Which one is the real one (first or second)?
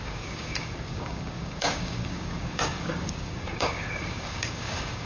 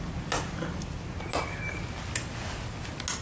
second